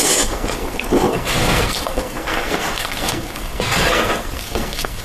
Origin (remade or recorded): remade